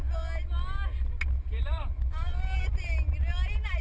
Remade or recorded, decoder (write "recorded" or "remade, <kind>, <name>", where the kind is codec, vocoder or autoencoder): recorded